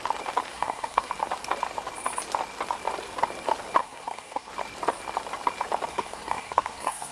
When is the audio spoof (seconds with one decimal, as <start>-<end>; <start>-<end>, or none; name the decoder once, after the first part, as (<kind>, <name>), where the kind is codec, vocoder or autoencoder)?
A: 0.5-1.1 (codec, SNAC); 3.8-4.5; 5.9-7.1